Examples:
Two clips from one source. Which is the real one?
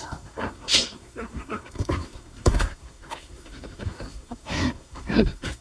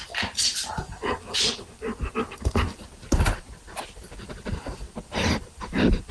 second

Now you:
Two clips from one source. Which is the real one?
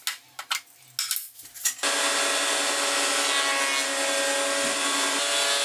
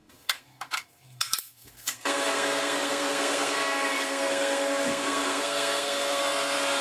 first